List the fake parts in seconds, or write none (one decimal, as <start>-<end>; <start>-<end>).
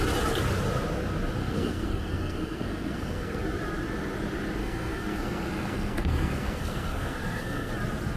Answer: 1.4-3.4; 4.6-7.7